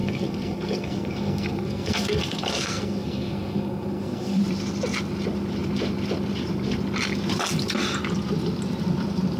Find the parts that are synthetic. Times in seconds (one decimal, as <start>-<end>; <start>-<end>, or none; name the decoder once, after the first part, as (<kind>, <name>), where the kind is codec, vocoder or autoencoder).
0.0-4.4 (codec, SNAC)